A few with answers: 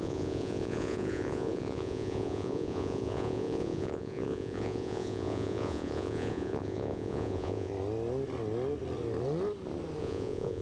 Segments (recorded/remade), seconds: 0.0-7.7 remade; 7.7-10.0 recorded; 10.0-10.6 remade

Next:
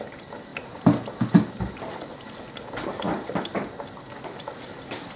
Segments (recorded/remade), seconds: 0.0-5.2 recorded

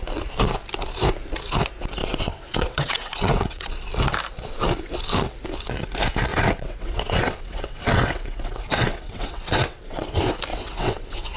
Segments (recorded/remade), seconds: 0.0-2.0 recorded; 2.0-3.7 remade; 3.7-6.3 recorded; 6.3-10.1 remade; 10.1-10.5 recorded; 10.5-11.4 remade

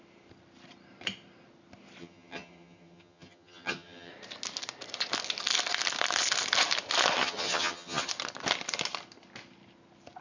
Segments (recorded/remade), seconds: 0.0-2.0 recorded; 2.0-4.1 remade; 4.1-7.2 recorded; 7.2-8.1 remade; 8.1-10.2 recorded

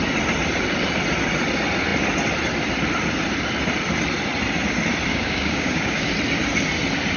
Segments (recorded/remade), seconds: 0.0-5.1 recorded; 5.1-6.1 remade; 6.1-7.2 recorded

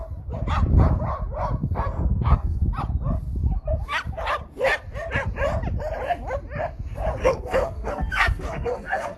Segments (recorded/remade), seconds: 0.0-1.6 recorded; 1.6-2.6 remade; 2.6-7.2 recorded; 7.2-9.2 remade

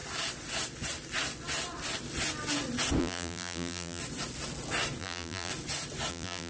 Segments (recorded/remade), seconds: 0.0-3.0 recorded; 3.0-4.0 remade; 4.0-5.0 recorded; 5.0-5.5 remade; 5.5-6.1 recorded; 6.1-6.5 remade

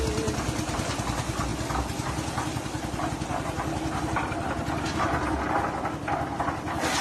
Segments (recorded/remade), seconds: 0.0-7.0 recorded